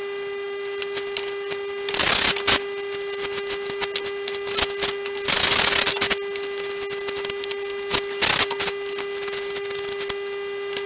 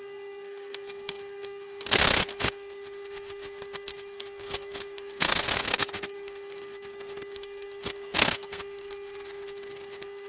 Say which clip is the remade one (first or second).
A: second